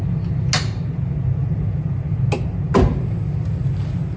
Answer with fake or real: real